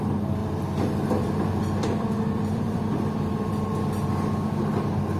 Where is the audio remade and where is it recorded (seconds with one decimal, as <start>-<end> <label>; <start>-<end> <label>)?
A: 0.0-0.4 recorded; 0.4-3.5 remade; 3.5-5.2 recorded

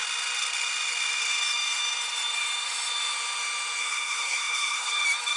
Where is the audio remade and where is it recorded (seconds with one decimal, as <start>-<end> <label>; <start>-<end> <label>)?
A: 0.0-3.8 recorded; 3.8-4.9 remade; 4.9-5.4 recorded

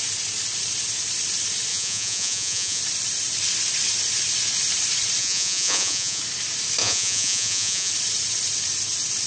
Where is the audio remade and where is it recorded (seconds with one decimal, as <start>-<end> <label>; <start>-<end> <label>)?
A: 0.0-1.7 recorded; 1.7-2.8 remade; 2.8-5.2 recorded; 5.2-6.2 remade; 6.2-6.8 recorded; 6.8-7.9 remade; 7.9-9.3 recorded

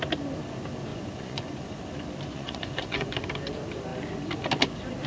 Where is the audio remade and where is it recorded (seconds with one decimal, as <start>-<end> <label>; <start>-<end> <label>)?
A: 0.0-0.9 recorded; 0.9-1.8 remade; 1.8-2.3 recorded; 2.3-3.2 remade; 3.2-5.1 recorded

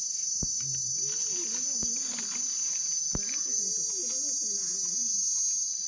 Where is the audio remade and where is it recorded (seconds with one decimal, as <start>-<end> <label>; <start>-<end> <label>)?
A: 0.0-5.9 recorded

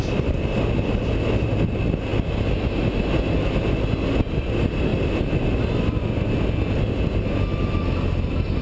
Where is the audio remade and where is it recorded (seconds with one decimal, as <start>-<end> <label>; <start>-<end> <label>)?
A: 0.0-4.9 recorded; 4.9-5.6 remade; 5.6-8.6 recorded

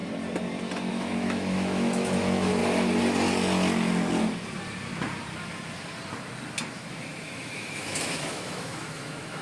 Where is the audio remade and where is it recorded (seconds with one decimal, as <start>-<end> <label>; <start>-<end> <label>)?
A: 0.0-0.9 recorded; 0.9-2.6 remade; 2.6-6.7 recorded; 6.7-9.4 remade